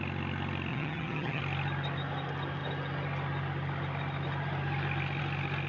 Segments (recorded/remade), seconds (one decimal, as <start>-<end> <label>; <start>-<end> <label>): 0.0-0.7 recorded; 0.7-1.4 remade; 1.4-5.7 recorded